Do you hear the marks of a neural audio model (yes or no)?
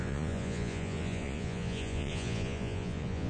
yes